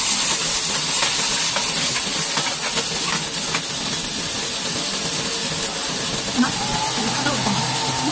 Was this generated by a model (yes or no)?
no